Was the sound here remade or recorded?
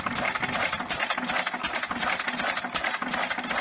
recorded